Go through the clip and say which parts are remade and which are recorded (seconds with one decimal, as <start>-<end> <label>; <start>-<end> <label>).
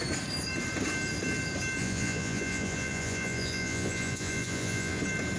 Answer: 0.0-1.8 recorded; 1.8-5.0 remade; 5.0-5.4 recorded